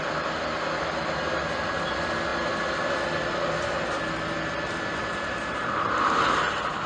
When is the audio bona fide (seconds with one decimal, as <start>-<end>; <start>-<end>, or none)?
0.0-6.9